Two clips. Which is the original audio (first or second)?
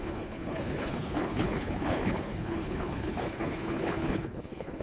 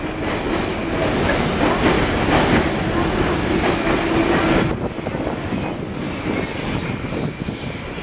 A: second